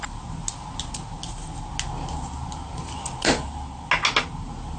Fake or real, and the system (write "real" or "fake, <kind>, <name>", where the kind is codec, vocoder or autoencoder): real